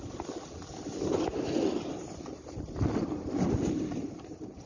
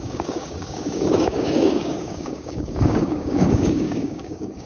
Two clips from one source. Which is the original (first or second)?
first